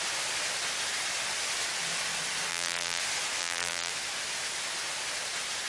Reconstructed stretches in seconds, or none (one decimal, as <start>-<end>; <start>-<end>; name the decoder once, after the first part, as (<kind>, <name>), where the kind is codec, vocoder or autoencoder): 2.5-3.0 (vocoder, BigVGAN v2); 3.4-3.9